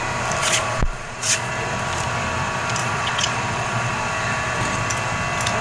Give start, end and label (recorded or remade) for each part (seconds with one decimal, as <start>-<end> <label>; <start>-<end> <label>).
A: 0.0-0.4 recorded; 0.4-1.5 remade; 1.5-2.8 recorded; 2.8-3.9 remade; 3.9-5.6 recorded